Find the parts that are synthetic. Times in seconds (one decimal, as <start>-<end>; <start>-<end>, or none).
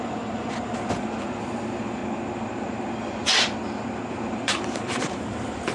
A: 0.0-2.0; 4.1-5.7